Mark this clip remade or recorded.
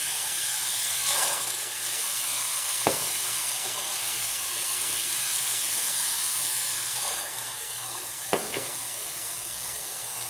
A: remade